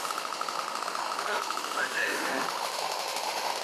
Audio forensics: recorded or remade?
remade